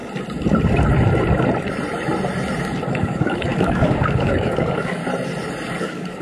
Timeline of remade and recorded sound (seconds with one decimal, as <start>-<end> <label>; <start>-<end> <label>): 0.0-2.9 recorded; 2.9-5.0 remade; 5.0-5.8 recorded; 5.8-6.2 remade